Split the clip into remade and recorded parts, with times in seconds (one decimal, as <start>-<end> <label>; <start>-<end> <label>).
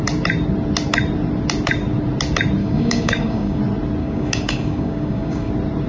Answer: 0.0-2.6 recorded; 2.6-3.6 remade; 3.6-4.0 recorded; 4.0-5.5 remade; 5.5-5.9 recorded